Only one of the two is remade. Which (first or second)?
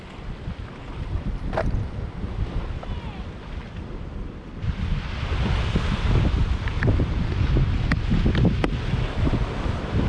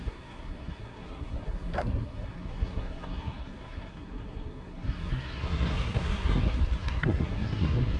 second